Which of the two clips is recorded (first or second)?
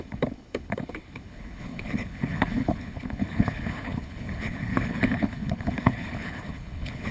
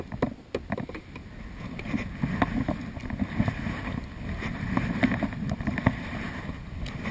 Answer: second